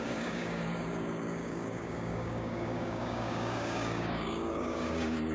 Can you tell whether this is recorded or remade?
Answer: remade